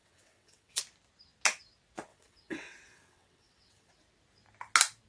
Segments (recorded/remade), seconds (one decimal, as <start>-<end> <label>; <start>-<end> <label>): 0.0-0.8 remade; 0.8-2.1 recorded; 2.1-3.9 remade; 3.9-5.1 recorded